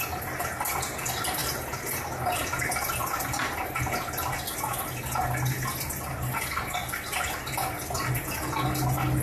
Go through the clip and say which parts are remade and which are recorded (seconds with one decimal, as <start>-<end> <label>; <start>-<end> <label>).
0.0-9.2 recorded